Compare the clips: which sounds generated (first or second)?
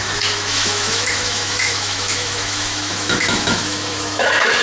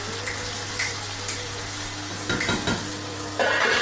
first